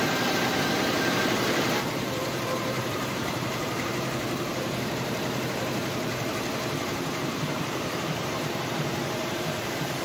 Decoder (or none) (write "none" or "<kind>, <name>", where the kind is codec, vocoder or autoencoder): vocoder, BigVGAN v2